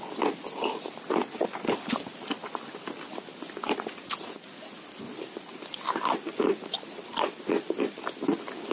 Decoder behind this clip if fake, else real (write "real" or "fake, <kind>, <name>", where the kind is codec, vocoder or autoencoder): real